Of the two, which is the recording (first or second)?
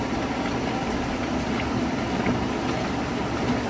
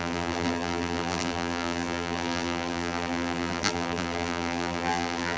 first